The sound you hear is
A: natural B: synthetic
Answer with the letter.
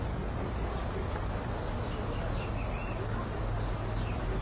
A